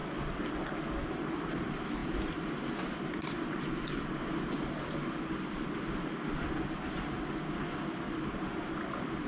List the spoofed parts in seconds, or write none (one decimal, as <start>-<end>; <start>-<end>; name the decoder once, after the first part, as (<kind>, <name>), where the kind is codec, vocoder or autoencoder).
2.0-3.8 (vocoder, BigVGAN v2)